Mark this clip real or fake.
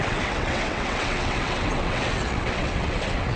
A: fake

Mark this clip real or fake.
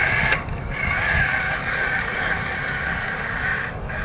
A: fake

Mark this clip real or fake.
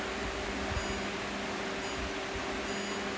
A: real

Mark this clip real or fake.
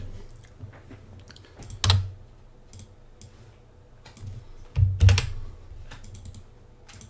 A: real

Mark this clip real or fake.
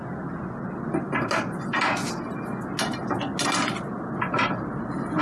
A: real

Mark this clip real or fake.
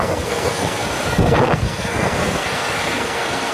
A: fake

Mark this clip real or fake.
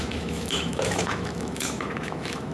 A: fake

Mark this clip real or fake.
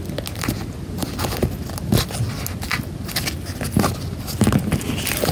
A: real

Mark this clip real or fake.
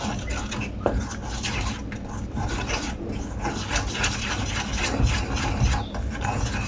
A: real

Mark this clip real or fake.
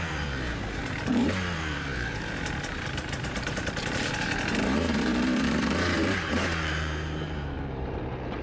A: fake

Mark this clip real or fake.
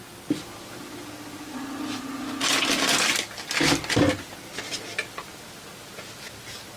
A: real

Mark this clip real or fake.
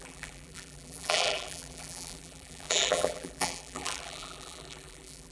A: fake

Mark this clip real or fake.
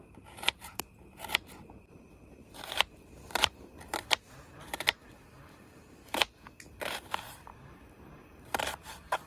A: fake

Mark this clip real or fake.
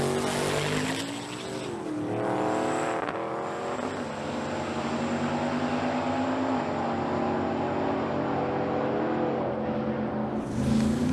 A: real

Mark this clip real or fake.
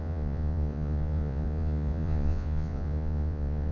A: fake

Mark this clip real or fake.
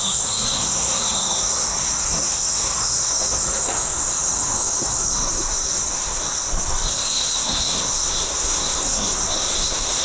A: fake